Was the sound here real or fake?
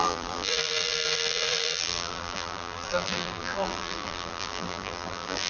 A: fake